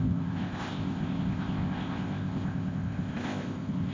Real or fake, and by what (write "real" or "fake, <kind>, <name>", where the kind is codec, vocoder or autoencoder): fake, codec, ZipCodec